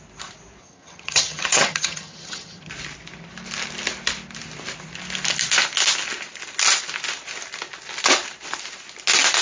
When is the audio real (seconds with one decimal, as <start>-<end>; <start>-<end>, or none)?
0.0-0.6; 2.7-9.4